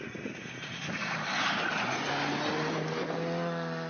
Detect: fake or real real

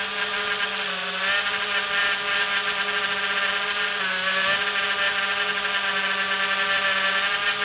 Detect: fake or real real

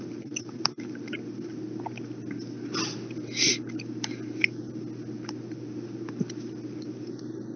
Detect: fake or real real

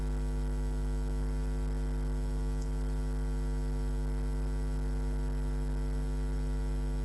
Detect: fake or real real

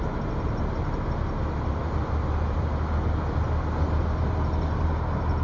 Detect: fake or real real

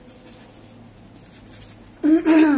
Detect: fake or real real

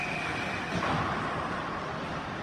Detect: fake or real real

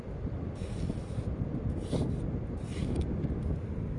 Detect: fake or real real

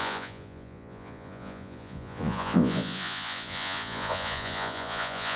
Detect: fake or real fake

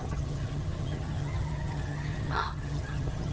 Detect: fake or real fake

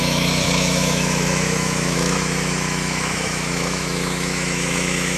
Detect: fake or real fake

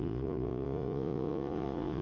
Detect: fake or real fake